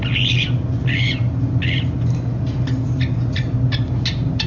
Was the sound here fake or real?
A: real